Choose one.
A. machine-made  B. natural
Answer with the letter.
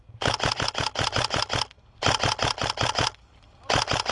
B